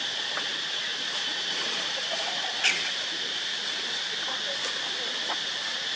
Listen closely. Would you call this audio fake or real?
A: real